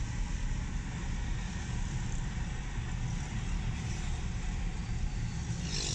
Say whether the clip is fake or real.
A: real